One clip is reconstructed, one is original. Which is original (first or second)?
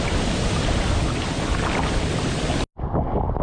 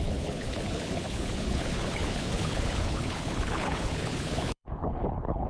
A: first